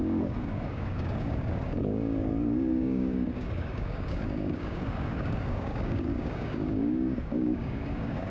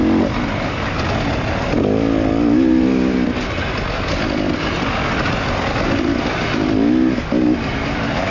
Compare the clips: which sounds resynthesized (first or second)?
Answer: first